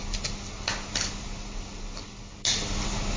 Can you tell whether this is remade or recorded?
recorded